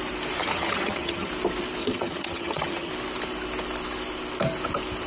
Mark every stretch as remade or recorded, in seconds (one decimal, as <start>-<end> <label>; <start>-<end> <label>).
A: 0.0-0.4 recorded; 0.4-1.3 remade; 1.3-1.8 recorded; 1.8-2.9 remade; 2.9-5.1 recorded